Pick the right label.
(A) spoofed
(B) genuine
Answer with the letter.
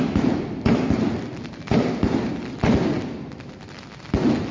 B